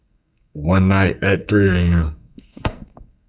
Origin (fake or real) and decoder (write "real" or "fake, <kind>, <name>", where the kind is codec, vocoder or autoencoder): fake, codec, SNAC